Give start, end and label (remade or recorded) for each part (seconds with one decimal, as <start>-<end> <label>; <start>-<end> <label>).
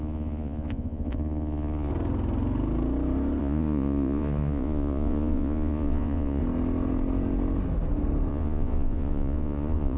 0.0-1.9 remade; 1.9-3.4 recorded; 3.4-6.4 remade; 6.4-8.3 recorded; 8.3-10.0 remade